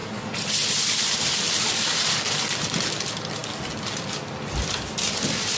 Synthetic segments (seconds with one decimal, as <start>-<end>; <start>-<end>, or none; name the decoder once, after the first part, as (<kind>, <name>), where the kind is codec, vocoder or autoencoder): 1.2-3.4 (vocoder, BigVGAN v2); 5.1-5.6